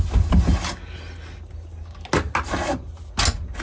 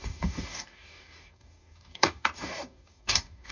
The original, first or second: first